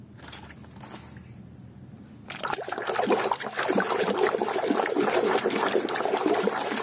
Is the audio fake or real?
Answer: fake